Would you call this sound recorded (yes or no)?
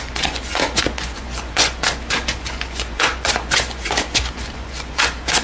no